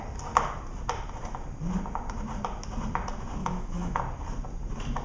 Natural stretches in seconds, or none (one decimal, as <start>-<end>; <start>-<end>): 0.0-3.4; 4.0-5.0

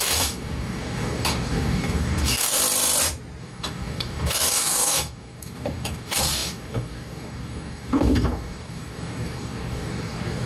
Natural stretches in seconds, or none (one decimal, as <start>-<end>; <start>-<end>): 2.6-3.4

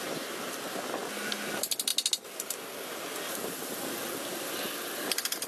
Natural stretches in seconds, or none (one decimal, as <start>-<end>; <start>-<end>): 0.0-5.5

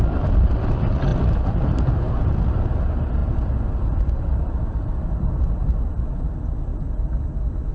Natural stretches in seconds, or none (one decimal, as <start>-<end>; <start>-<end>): 1.1-2.0

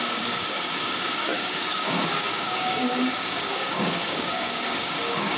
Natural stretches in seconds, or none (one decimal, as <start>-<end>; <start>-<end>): none

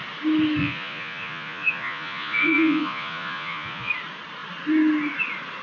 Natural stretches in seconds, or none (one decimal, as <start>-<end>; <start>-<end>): 0.0-0.6; 3.9-5.6